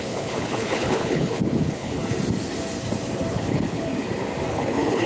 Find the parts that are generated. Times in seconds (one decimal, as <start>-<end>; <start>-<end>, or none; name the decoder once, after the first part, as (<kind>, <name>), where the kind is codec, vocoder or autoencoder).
0.0-2.0 (codec, HILCodec); 3.3-3.9; 4.5-5.1